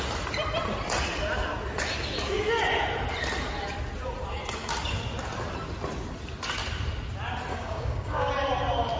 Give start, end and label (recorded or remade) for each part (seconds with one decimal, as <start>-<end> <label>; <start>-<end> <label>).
0.0-7.5 recorded; 7.5-8.3 remade; 8.3-9.0 recorded